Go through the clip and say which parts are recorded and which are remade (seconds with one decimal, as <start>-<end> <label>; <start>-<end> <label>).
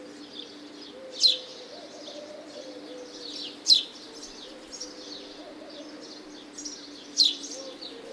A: 0.0-8.1 recorded